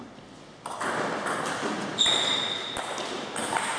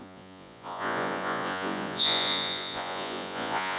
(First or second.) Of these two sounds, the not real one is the second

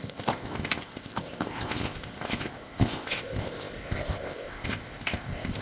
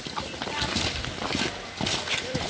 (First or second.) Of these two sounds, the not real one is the first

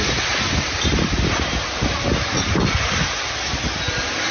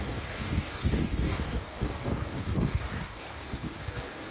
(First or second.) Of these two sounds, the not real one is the second